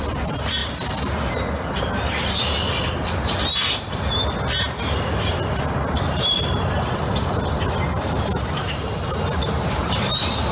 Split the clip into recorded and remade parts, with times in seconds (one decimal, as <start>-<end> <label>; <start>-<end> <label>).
0.0-10.5 recorded